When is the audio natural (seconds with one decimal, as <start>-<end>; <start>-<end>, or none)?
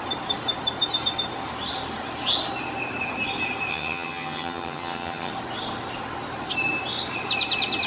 0.0-3.7; 5.3-7.9